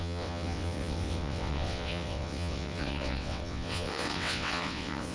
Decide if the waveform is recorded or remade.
remade